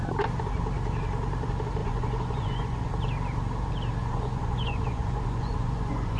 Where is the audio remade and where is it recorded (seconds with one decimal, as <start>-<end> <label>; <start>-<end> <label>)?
0.0-1.8 recorded; 1.8-2.9 remade; 2.9-4.0 recorded; 4.0-6.2 remade